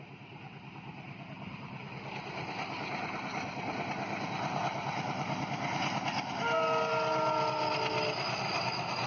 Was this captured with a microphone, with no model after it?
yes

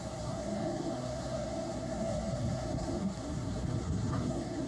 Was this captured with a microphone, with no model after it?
no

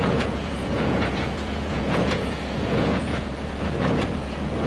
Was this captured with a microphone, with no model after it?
no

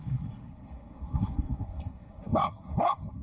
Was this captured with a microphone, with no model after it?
no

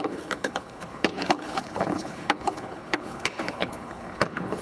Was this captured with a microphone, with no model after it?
no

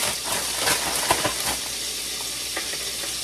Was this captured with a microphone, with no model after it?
yes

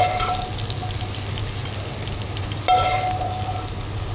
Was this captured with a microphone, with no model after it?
yes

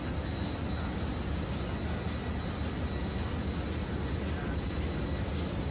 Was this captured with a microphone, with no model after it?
yes